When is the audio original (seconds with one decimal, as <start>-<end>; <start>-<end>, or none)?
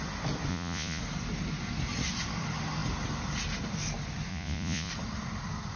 0.0-0.5; 1.0-4.3; 4.9-5.8